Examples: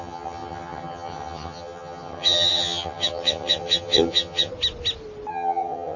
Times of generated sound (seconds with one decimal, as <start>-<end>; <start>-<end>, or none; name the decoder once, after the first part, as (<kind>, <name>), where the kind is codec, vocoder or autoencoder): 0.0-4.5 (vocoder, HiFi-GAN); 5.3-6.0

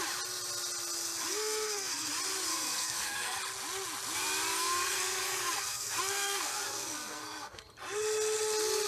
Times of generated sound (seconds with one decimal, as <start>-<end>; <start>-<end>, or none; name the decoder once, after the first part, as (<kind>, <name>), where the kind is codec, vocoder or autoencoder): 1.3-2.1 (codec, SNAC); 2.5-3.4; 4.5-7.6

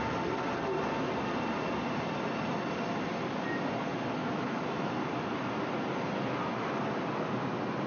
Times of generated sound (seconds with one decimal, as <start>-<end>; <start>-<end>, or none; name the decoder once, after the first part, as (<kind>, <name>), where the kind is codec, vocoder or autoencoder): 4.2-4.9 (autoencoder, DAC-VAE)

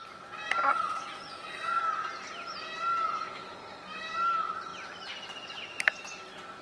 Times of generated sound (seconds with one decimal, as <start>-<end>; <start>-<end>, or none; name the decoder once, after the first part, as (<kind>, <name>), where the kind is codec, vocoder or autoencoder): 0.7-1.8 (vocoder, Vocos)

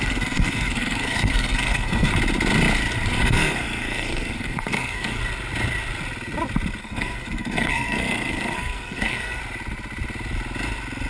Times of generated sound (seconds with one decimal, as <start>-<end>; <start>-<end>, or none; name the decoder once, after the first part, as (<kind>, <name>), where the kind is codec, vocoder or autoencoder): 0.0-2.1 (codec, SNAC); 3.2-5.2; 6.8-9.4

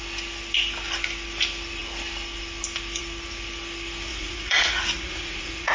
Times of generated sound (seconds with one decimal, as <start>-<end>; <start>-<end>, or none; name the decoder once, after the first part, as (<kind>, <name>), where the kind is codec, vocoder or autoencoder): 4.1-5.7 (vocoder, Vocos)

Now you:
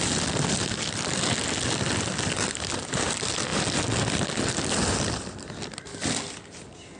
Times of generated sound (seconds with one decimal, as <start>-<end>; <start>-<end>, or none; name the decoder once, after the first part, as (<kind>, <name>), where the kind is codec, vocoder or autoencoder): none